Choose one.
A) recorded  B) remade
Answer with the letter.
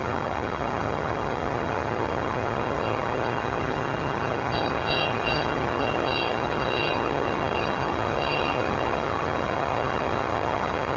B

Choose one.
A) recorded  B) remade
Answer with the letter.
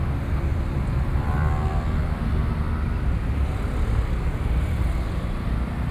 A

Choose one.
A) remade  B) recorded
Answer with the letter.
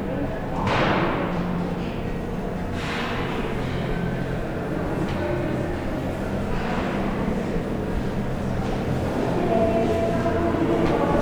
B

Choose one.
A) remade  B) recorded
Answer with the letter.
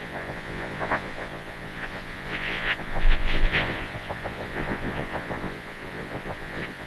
A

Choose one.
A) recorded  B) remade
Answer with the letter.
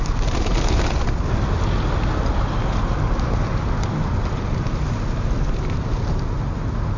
A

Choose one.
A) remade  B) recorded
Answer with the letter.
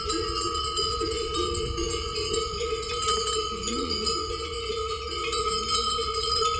A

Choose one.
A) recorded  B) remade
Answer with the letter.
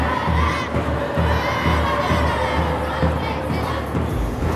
A